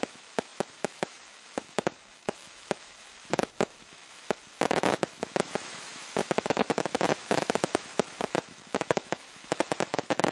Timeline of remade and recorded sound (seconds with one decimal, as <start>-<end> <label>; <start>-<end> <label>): 0.0-10.3 remade